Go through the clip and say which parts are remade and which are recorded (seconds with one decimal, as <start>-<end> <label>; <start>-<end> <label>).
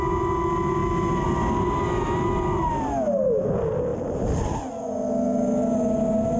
0.0-6.4 recorded